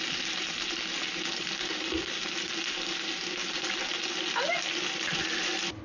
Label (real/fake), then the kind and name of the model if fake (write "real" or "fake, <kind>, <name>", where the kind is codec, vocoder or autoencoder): real